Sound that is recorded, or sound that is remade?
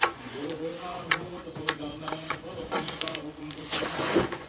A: remade